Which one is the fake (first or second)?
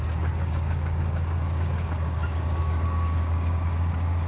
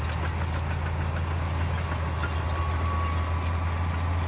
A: first